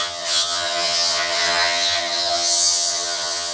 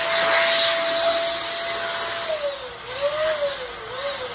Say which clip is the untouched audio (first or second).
second